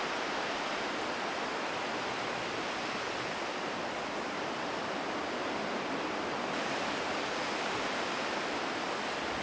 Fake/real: real